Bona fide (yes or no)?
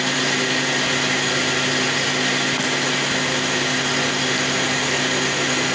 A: yes